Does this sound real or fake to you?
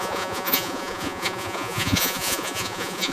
fake